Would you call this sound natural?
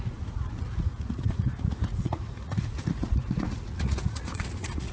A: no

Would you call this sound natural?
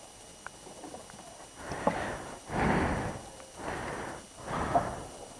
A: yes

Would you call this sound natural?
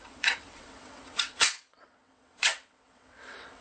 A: no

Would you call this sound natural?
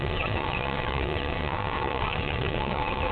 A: no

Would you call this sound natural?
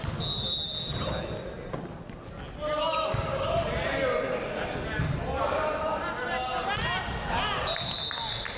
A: yes